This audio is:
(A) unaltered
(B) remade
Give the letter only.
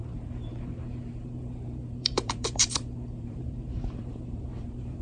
B